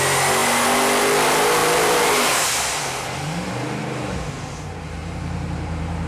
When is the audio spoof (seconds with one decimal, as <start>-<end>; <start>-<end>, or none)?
1.6-2.5; 3.8-4.6; 5.0-6.1